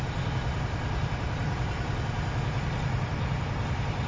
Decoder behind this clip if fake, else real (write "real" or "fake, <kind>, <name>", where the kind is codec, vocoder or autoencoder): real